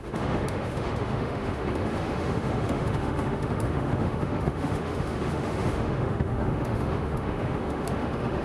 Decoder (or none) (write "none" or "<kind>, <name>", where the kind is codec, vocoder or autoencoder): autoencoder, DAC-VAE